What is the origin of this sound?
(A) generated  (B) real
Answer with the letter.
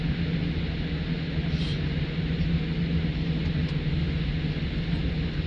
B